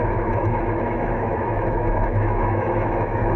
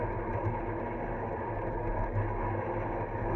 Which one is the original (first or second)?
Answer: second